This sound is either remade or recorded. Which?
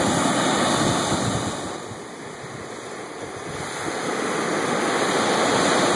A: recorded